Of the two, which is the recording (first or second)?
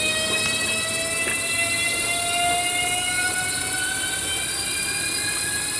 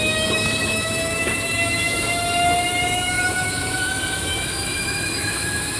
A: first